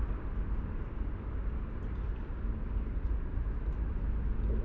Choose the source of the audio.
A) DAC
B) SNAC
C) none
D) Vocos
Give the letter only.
C